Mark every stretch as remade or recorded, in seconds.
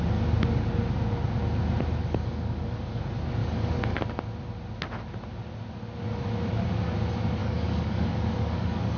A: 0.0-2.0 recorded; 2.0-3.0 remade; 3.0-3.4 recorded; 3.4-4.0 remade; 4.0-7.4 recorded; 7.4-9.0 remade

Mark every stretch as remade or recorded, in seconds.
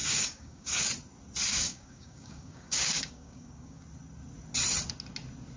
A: 0.0-0.9 remade; 0.9-1.5 recorded; 1.5-3.8 remade; 3.8-5.6 recorded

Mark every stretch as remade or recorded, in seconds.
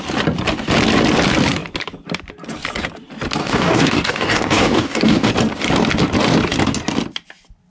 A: 0.0-3.4 recorded; 3.4-5.3 remade; 5.3-7.7 recorded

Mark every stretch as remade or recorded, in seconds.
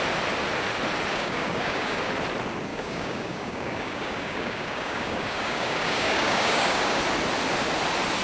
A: 0.0-1.1 recorded; 1.1-2.1 remade; 2.1-2.7 recorded; 2.7-7.0 remade; 7.0-8.2 recorded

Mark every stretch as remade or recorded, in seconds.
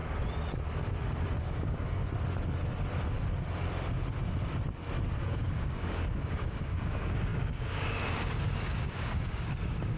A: 0.0-1.4 recorded; 1.4-2.0 remade; 2.0-5.2 recorded; 5.2-10.0 remade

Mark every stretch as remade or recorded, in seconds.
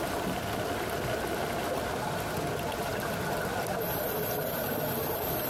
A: 0.0-5.5 recorded